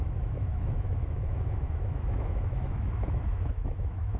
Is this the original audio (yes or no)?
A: no